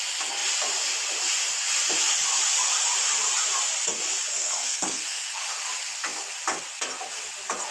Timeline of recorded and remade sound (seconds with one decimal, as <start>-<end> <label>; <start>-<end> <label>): 0.0-4.3 recorded; 4.3-5.4 remade; 5.4-7.7 recorded

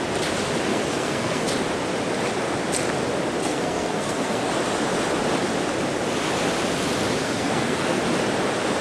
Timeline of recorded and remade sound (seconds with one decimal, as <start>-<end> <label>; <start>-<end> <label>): 0.0-0.7 recorded; 0.7-1.5 remade; 1.5-3.4 recorded; 3.4-4.5 remade; 4.5-7.2 recorded; 7.2-8.0 remade; 8.0-8.8 recorded

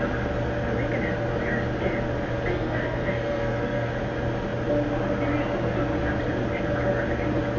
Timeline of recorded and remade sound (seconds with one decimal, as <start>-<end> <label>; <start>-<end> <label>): 0.0-2.5 recorded; 2.5-3.9 remade; 3.9-7.6 recorded

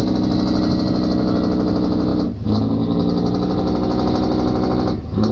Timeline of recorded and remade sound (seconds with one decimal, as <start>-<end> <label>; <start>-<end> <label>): 0.0-5.3 recorded